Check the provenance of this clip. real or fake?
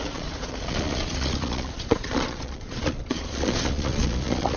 fake